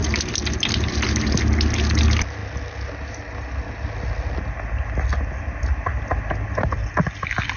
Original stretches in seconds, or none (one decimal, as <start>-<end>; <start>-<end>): 0.0-7.6